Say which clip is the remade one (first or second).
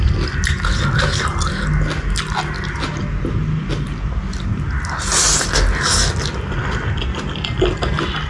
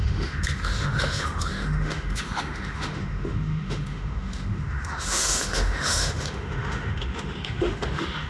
second